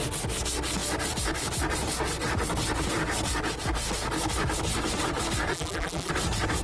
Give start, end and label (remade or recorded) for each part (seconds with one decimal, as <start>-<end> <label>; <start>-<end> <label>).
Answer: 0.0-5.5 recorded; 5.5-6.1 remade; 6.1-6.6 recorded